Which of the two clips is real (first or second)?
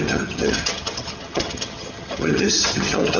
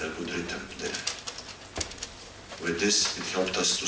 second